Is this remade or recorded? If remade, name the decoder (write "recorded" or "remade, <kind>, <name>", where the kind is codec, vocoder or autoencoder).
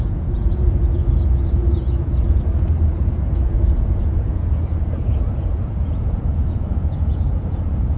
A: remade, vocoder, Vocos